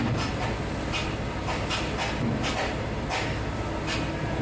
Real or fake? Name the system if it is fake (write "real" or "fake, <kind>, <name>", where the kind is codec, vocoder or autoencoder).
real